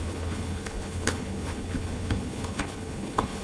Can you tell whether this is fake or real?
fake